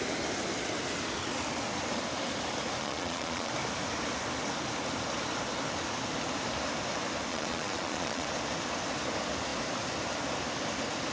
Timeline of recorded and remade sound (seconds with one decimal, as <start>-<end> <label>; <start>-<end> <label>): 0.0-2.8 recorded; 2.8-3.5 remade; 3.5-7.3 recorded; 7.3-8.3 remade; 8.3-11.1 recorded